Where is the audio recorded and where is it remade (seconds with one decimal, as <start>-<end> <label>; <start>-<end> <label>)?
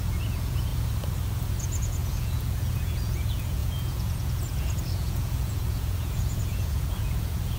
0.0-0.7 remade; 0.7-1.6 recorded; 1.6-7.6 remade